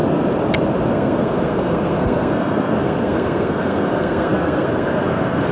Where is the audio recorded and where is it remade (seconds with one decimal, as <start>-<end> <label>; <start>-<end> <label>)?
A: 0.0-0.9 recorded; 0.9-5.5 remade